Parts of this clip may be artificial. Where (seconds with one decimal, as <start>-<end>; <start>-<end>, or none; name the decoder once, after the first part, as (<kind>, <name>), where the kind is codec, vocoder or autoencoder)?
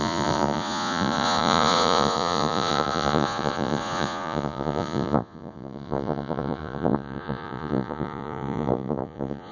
0.0-9.5 (vocoder, Vocos)